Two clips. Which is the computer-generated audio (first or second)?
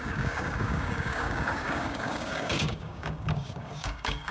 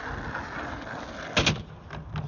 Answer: first